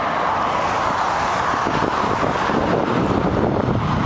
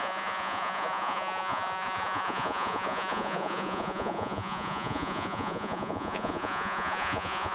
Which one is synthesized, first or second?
second